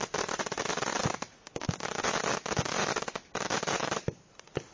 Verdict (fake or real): real